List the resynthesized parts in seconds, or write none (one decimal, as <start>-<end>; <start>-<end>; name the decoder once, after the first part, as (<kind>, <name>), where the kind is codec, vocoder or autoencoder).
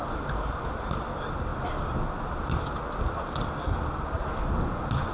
none